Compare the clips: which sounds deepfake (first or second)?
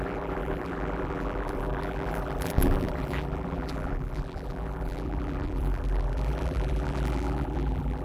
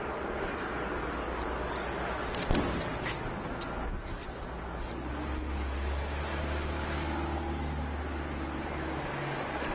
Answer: first